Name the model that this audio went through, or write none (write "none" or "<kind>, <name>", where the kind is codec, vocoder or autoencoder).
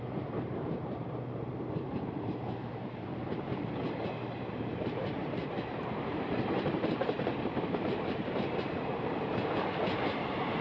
vocoder, BigVGAN v2